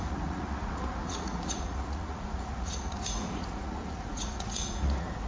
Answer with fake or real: fake